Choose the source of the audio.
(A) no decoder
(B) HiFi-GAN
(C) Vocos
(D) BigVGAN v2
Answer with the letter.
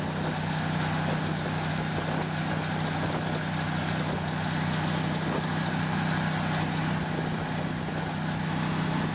A